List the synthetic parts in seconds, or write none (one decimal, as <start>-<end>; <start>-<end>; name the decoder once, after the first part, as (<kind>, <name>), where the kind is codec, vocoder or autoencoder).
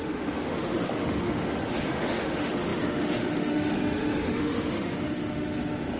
0.0-6.0 (autoencoder, DAC-VAE)